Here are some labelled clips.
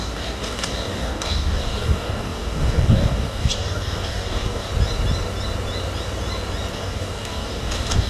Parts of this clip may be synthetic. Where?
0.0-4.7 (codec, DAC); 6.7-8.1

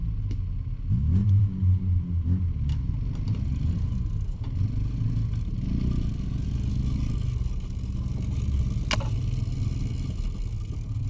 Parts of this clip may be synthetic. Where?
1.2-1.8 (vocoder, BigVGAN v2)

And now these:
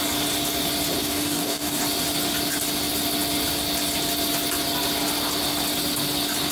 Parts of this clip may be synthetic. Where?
1.0-1.8 (codec, DAC)

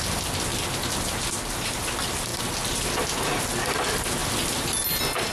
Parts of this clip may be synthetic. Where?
4.2-4.8 (vocoder, BigVGAN v2)

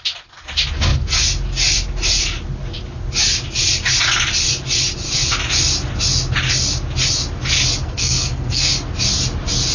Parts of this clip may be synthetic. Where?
7.8-8.7 (codec, SNAC)

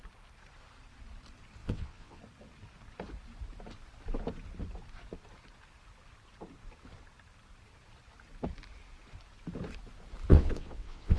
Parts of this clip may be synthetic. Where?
1.6-2.2 (vocoder, WaveNeXt); 10.3-11.2

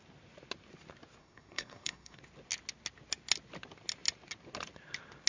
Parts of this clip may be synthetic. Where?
1.2-2.2 (codec, SNAC)

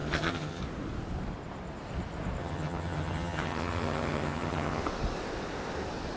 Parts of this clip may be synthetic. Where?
0.0-0.6 (vocoder, HiFi-GAN); 2.4-4.8